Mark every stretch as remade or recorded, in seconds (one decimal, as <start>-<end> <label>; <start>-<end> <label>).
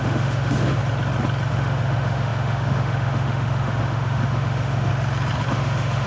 0.0-0.8 remade; 0.8-1.5 recorded; 1.5-4.9 remade; 4.9-5.5 recorded; 5.5-6.1 remade